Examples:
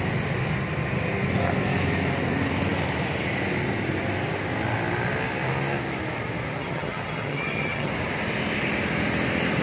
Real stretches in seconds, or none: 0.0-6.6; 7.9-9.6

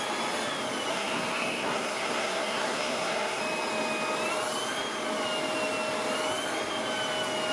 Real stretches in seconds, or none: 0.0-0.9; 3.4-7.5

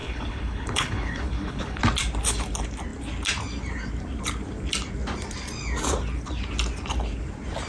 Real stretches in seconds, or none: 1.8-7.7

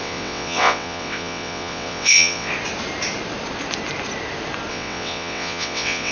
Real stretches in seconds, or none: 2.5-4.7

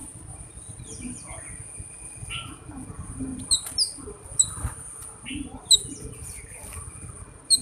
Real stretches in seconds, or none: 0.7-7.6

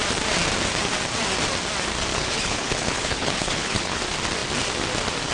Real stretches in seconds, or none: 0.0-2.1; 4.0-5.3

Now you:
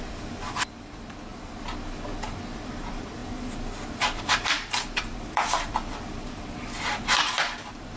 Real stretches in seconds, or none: 1.3-2.5; 3.2-4.2